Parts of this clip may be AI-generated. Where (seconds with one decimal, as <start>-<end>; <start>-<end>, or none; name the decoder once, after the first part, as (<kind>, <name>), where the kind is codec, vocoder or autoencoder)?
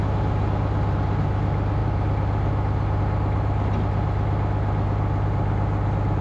none